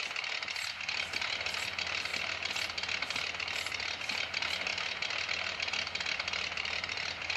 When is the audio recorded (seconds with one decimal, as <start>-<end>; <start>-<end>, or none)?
4.7-5.3